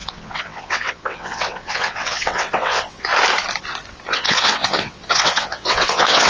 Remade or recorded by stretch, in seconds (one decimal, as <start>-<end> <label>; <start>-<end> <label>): 0.0-3.1 remade; 3.1-4.1 recorded; 4.1-6.3 remade